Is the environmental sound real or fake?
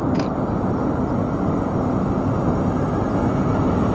real